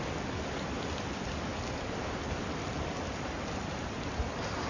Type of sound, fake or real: real